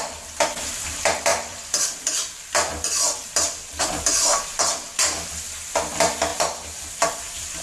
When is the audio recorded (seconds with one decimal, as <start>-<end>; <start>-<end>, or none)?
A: none